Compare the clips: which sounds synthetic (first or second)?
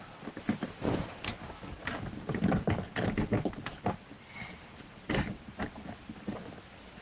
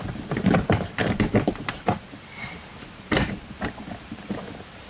second